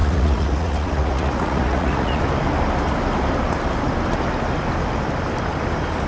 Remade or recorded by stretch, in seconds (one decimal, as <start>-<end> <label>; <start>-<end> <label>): 0.0-2.2 remade; 2.2-6.1 recorded